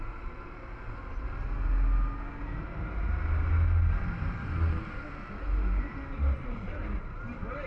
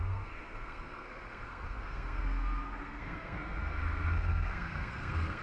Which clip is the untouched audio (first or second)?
first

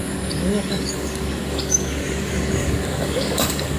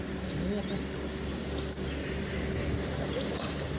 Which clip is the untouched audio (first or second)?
second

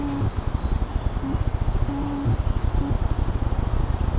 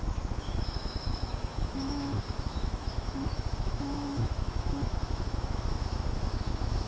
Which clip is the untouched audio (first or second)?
first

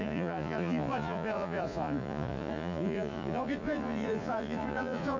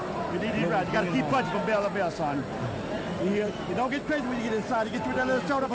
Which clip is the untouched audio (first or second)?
second